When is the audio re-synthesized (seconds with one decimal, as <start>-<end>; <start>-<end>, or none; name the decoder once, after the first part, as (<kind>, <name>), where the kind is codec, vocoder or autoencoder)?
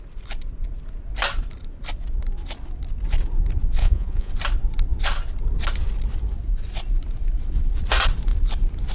3.8-4.3 (vocoder, Vocos)